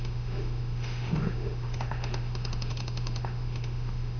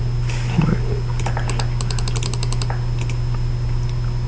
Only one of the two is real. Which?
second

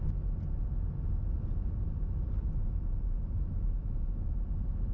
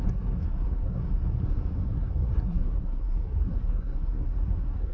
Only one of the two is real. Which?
first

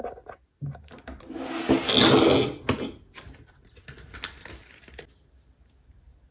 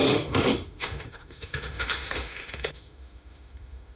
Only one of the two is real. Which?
first